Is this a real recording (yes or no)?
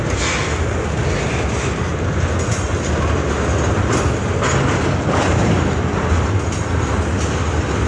yes